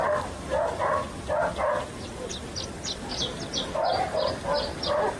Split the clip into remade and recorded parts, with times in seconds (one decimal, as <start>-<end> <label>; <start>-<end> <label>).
0.0-0.5 remade; 0.5-3.6 recorded; 3.6-5.2 remade